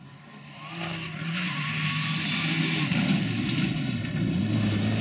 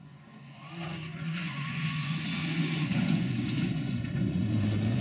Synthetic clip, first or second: second